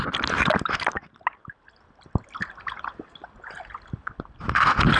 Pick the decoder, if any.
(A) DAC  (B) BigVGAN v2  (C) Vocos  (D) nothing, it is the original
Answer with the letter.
D